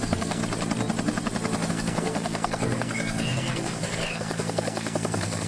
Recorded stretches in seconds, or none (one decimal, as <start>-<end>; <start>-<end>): 0.4-1.7